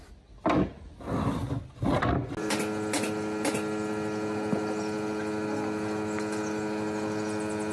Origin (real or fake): real